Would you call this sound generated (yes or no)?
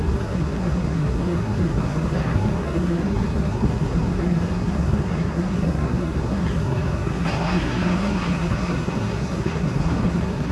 yes